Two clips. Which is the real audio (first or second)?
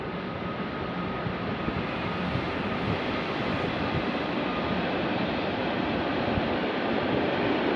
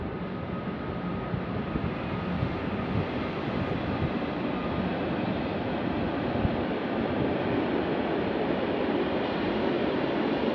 second